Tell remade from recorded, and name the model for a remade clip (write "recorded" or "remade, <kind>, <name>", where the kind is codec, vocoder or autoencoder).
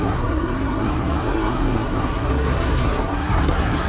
remade, codec, SNAC